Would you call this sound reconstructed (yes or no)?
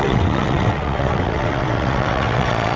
yes